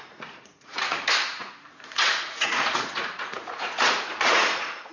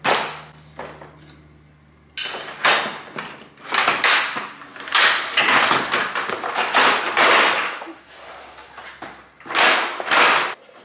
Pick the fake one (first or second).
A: first